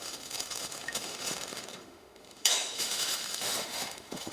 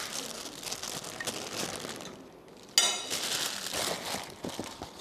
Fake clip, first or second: first